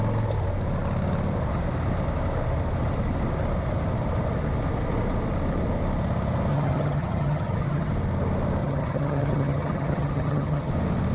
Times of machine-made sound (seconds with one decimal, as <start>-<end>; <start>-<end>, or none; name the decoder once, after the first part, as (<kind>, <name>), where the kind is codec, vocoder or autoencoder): 6.5-7.9 (vocoder, HiFi-GAN); 8.6-10.7